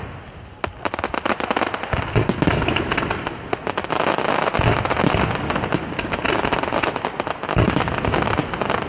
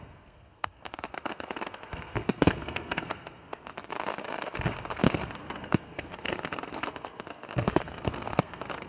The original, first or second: first